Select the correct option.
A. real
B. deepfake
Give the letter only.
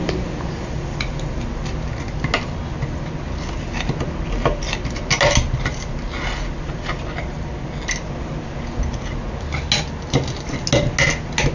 A